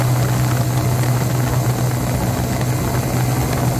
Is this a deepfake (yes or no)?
no